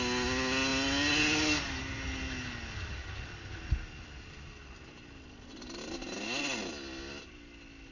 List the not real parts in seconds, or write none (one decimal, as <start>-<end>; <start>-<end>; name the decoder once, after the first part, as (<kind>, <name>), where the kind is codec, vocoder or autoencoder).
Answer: none